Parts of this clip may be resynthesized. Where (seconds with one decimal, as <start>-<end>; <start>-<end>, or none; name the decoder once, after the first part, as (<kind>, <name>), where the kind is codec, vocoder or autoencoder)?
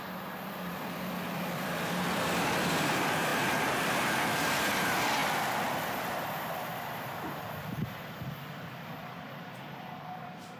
0.0-3.3 (vocoder, BigVGAN v2); 4.2-5.2; 6.3-10.6